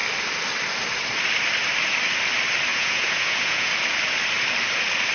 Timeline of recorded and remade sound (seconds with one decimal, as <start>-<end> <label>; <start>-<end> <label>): 0.0-2.7 recorded; 2.7-3.7 remade; 3.7-5.1 recorded